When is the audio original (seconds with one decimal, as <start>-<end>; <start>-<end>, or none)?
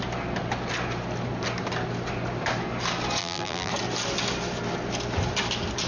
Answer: 0.0-3.2; 3.7-5.9